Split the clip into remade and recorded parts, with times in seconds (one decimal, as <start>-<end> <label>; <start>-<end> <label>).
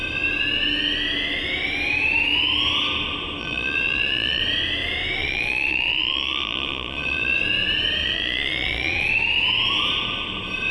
0.0-3.4 recorded; 3.4-4.4 remade; 4.4-5.2 recorded; 5.2-7.4 remade; 7.4-8.0 recorded; 8.0-9.1 remade; 9.1-10.7 recorded